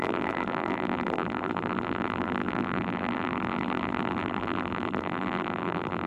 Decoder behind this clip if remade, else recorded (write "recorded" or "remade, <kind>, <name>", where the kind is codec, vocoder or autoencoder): remade, vocoder, BigVGAN v2